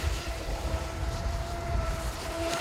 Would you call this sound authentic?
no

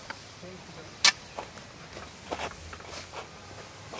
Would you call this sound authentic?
yes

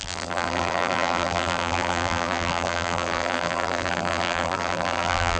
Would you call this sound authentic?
no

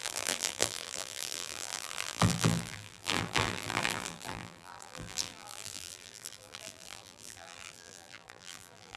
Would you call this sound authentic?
no